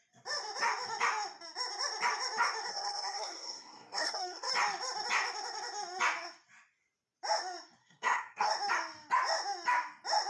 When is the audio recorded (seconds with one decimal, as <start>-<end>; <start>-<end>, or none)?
0.0-2.7; 4.5-7.8; 8.5-10.3